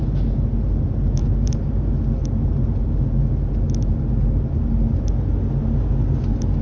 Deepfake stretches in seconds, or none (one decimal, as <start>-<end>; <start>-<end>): none